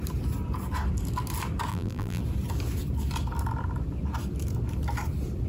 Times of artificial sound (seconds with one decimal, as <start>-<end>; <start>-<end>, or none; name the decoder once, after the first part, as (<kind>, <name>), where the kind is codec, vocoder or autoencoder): 1.7-2.2 (vocoder, BigVGAN v2)